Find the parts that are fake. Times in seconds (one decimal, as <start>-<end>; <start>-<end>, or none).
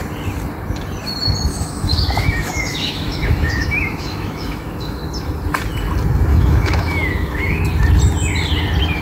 1.5-5.0; 6.3-7.6